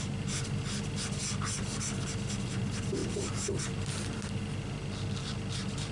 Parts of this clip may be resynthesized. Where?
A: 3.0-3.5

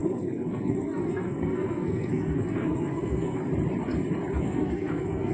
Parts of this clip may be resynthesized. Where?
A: 0.0-3.4; 4.4-5.3

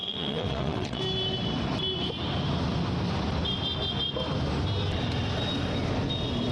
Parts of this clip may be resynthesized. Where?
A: 0.0-1.0

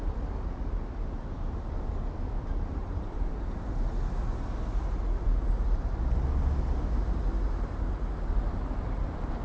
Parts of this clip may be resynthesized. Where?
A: 2.8-3.4

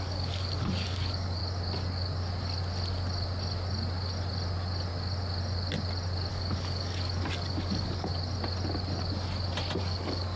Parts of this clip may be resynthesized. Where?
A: 0.0-1.4; 6.3-8.1; 9.8-10.4

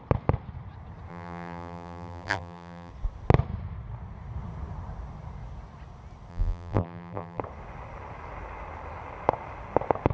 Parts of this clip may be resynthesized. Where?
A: 1.1-2.9; 6.3-7.4